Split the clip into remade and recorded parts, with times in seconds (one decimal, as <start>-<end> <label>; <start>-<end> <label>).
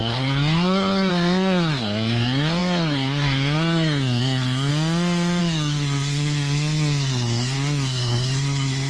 0.0-4.7 remade; 4.7-5.4 recorded; 5.4-8.9 remade